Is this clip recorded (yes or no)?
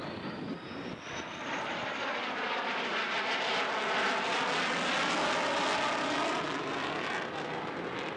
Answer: yes